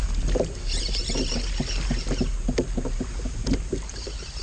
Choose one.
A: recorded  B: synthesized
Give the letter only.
A